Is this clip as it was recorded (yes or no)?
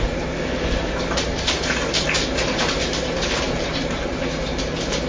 no